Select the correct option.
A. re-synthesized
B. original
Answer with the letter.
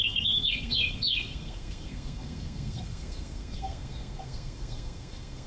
A